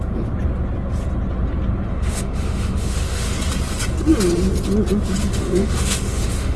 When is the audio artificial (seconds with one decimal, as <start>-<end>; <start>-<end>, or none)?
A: 1.9-3.3; 5.3-6.6